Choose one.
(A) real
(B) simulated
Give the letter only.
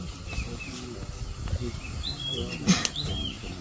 A